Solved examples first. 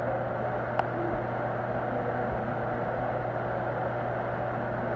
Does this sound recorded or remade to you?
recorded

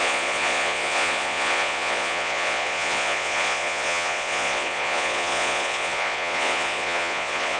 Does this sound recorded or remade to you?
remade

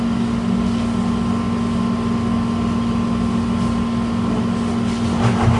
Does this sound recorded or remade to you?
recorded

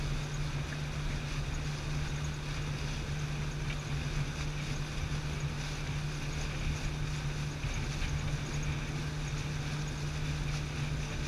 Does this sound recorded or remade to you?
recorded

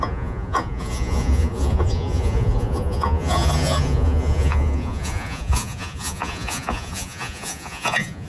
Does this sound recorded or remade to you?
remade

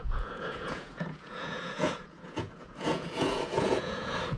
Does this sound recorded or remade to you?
remade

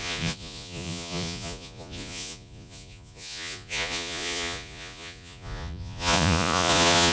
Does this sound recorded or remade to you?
remade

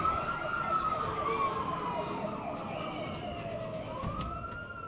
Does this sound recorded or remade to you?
recorded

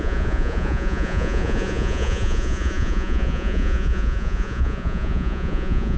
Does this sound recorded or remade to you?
remade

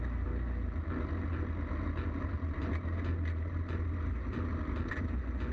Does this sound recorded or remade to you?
recorded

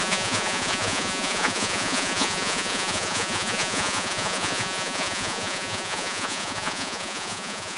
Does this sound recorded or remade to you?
remade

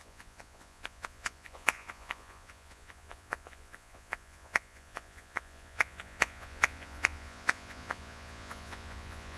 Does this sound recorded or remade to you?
remade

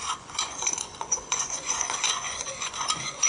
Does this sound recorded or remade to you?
remade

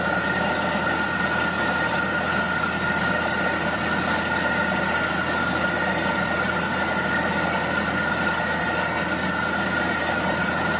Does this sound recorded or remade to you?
recorded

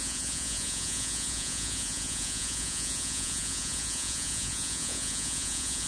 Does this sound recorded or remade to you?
remade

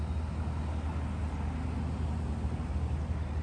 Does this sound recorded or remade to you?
recorded